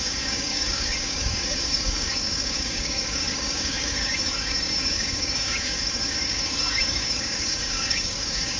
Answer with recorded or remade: remade